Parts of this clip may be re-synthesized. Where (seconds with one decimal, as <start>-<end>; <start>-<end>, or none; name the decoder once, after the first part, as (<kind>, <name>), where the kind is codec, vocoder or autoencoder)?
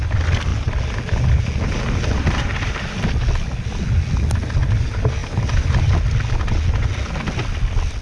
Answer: 5.2-5.9 (vocoder, BigVGAN v2)